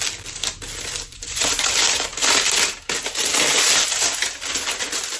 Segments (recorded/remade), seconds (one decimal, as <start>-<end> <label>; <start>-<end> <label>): 0.0-1.1 recorded; 1.1-1.7 remade; 1.7-5.2 recorded